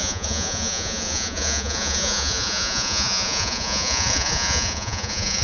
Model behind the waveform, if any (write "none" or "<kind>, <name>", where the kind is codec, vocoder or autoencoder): vocoder, Vocos